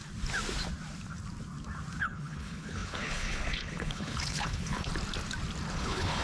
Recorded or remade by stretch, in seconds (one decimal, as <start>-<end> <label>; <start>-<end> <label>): 0.0-2.0 recorded; 2.0-4.9 remade; 4.9-5.7 recorded; 5.7-6.2 remade